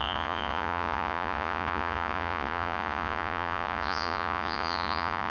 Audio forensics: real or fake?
fake